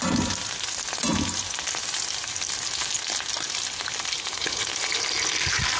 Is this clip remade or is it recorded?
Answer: recorded